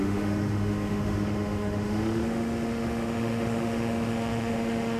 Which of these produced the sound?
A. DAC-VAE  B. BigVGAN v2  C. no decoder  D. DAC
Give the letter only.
A